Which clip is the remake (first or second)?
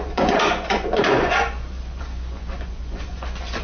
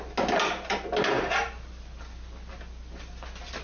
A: first